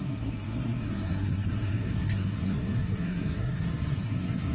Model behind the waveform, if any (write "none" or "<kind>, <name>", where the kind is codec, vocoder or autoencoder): codec, SNAC